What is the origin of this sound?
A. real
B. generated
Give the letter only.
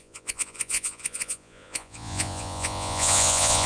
B